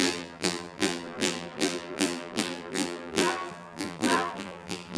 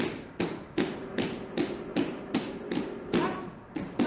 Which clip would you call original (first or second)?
second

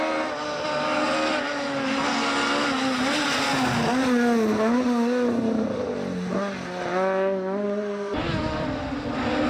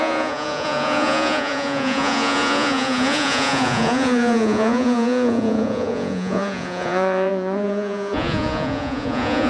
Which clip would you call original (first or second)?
first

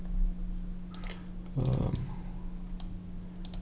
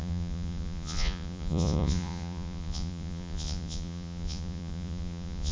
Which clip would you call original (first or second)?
first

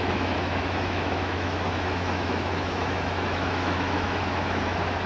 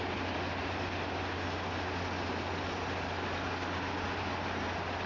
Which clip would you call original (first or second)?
second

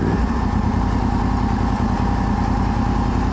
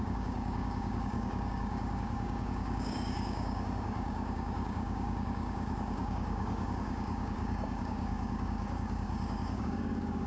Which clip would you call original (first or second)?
first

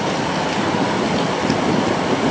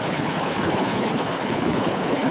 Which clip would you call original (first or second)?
first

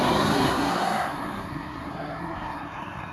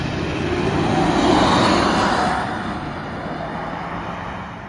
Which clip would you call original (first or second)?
second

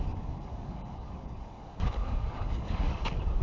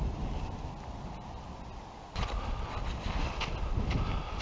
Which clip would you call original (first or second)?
second